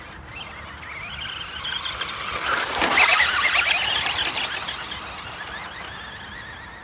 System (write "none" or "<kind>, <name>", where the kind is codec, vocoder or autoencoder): none